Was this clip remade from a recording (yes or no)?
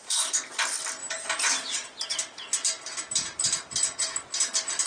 no